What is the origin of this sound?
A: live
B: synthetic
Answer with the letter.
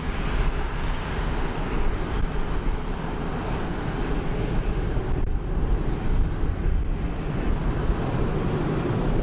A